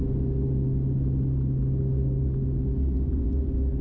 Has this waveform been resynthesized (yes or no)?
no